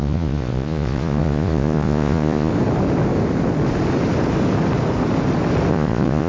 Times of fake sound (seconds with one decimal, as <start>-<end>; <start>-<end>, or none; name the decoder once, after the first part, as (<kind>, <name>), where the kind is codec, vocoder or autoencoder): 0.0-2.5 (vocoder, Vocos); 5.7-6.3